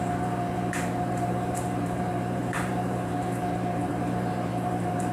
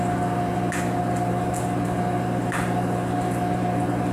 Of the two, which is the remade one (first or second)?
first